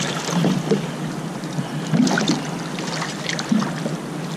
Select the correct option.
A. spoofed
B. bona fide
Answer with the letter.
B